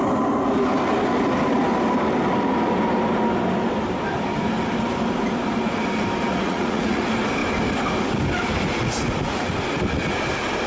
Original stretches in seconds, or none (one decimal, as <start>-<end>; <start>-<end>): 0.0-6.3; 7.0-10.7